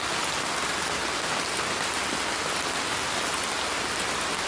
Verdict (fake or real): real